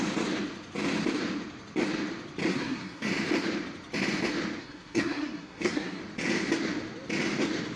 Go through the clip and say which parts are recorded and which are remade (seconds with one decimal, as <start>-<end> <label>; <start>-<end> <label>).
0.0-2.5 recorded; 2.5-3.1 remade; 3.1-4.6 recorded; 4.6-6.0 remade; 6.0-7.8 recorded